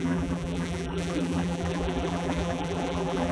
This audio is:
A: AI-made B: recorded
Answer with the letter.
A